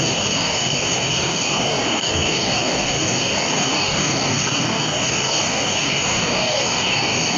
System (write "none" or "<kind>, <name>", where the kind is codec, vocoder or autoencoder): codec, DAC